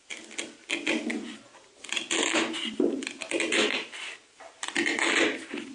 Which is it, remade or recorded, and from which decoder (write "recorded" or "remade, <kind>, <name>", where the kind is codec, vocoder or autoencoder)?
recorded